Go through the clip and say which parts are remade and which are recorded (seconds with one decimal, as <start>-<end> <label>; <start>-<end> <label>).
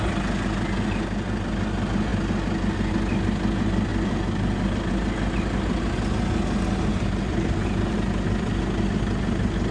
0.0-3.9 recorded; 3.9-4.9 remade; 4.9-6.9 recorded; 6.9-8.6 remade; 8.6-9.7 recorded